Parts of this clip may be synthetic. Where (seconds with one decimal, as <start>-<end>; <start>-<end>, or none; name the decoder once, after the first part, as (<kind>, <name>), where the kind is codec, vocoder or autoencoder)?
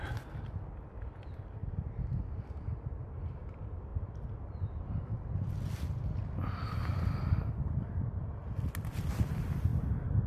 1.6-2.4 (vocoder, BigVGAN v2)